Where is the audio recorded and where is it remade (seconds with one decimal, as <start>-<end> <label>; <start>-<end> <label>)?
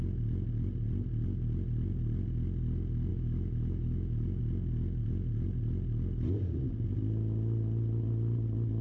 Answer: 0.0-3.1 recorded; 3.1-4.4 remade; 4.4-8.8 recorded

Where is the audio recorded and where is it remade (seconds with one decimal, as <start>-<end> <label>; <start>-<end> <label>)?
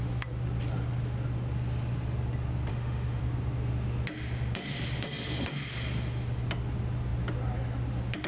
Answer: 0.0-2.7 recorded; 2.7-3.2 remade; 3.2-8.3 recorded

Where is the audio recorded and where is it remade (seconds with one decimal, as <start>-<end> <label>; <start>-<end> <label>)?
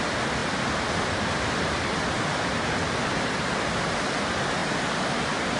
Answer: 0.0-5.6 recorded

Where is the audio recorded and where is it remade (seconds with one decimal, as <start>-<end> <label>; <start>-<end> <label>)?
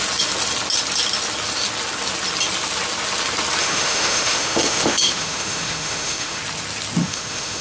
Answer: 0.0-3.6 recorded; 3.6-6.4 remade; 6.4-7.0 recorded; 7.0-7.6 remade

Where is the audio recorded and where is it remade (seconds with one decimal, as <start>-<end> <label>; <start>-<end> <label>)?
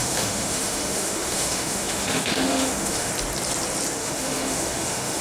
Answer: 0.0-3.1 remade; 3.1-4.0 recorded; 4.0-5.2 remade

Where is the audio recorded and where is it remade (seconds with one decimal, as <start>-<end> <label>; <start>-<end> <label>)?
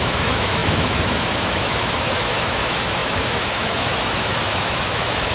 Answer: 0.0-5.3 remade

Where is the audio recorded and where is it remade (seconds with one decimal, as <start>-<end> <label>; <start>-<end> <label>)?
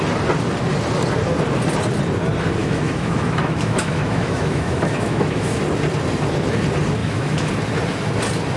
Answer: 0.0-2.6 recorded; 2.6-5.6 remade; 5.6-7.0 recorded; 7.0-7.5 remade; 7.5-8.6 recorded